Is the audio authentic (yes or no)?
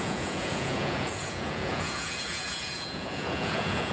no